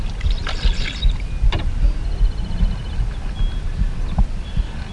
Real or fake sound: real